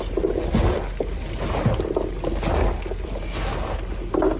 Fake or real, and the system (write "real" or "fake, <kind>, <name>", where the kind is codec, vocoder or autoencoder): real